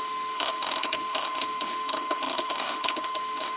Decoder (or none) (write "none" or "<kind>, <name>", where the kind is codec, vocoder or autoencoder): autoencoder, DAC-VAE